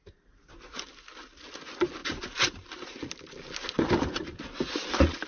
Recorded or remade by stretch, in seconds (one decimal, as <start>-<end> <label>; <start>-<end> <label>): 0.0-5.3 recorded